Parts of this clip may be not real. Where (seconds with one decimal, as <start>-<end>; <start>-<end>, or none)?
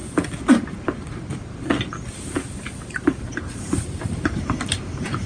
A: 3.2-5.3